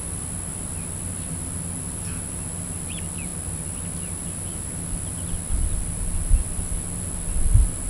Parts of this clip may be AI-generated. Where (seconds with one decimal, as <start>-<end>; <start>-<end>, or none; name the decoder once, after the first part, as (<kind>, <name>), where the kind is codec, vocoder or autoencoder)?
none